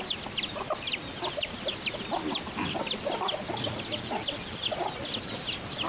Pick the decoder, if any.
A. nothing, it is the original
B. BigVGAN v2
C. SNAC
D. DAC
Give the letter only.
A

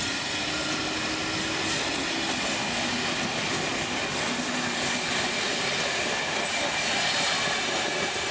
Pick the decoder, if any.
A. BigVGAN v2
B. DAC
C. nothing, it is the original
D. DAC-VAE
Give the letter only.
C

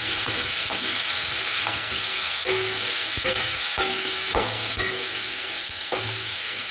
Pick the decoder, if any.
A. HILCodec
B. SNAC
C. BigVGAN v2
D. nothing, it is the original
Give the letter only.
B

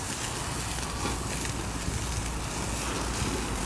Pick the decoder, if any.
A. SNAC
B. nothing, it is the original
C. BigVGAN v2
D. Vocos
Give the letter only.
B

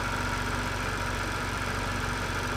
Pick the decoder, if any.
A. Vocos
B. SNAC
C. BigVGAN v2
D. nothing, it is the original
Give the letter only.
C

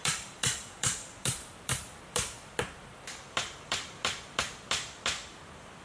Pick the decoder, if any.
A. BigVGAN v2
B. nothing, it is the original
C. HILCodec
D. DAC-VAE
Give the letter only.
A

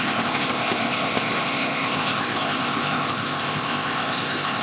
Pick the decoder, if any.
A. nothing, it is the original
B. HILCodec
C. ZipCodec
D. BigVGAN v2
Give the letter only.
C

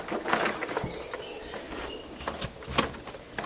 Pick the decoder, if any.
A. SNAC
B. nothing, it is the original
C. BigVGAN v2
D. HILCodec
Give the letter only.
B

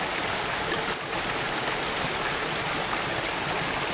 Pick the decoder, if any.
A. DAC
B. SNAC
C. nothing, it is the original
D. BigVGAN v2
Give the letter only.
C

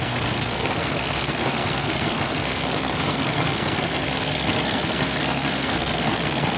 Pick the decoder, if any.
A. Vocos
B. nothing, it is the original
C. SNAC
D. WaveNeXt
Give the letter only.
C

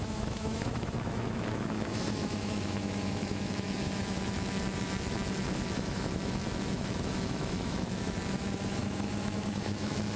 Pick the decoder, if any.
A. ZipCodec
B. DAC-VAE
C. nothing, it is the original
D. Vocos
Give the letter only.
B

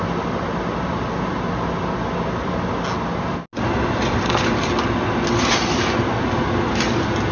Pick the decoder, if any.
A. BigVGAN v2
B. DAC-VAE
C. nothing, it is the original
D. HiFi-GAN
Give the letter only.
C